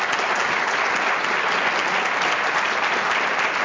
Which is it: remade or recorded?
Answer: recorded